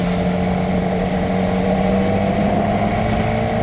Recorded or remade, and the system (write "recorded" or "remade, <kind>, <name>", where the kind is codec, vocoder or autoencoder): recorded